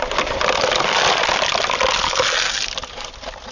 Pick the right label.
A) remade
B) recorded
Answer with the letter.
B